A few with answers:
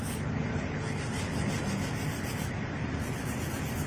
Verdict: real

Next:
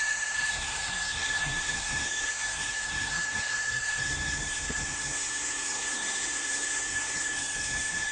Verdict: fake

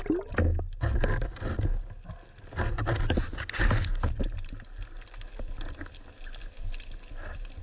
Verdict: real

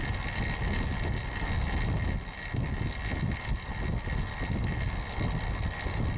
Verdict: real